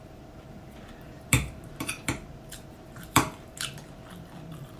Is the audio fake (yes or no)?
yes